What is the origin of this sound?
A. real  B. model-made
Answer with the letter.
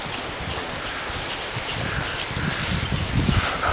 A